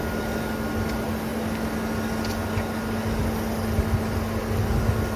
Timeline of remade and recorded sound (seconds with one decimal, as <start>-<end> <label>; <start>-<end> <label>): 0.0-5.2 recorded